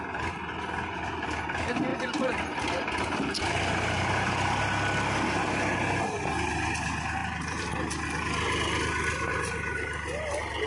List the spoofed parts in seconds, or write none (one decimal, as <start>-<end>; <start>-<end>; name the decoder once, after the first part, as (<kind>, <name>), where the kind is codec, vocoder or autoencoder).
1.9-4.6 (vocoder, BigVGAN v2); 7.2-7.7